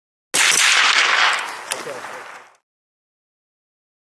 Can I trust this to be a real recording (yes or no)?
yes